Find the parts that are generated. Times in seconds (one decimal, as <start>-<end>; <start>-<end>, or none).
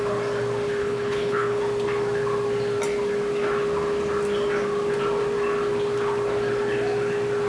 0.8-1.6